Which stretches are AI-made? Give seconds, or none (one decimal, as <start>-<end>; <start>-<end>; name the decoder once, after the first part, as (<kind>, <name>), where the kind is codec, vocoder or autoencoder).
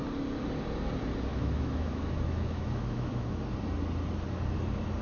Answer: 1.3-3.4 (autoencoder, DAC-VAE)